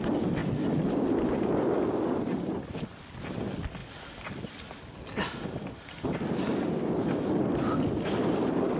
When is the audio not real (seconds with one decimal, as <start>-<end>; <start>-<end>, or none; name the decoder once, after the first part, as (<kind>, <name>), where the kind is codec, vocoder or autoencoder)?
none